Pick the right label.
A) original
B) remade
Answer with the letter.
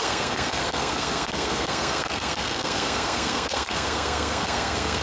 B